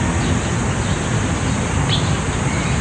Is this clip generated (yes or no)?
no